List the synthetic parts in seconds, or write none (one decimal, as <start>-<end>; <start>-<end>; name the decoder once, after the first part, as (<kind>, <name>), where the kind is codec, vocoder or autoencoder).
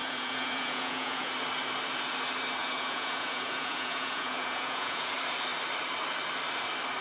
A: 0.0-1.3 (vocoder, Vocos); 2.6-5.1